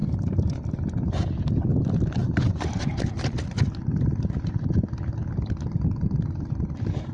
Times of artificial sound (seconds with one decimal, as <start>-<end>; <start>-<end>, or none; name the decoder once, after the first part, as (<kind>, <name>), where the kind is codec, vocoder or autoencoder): 0.0-0.6 (vocoder, BigVGAN v2); 2.2-2.9